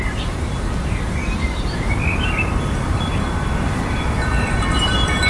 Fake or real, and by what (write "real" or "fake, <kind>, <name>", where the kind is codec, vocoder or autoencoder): fake, vocoder, BigVGAN v2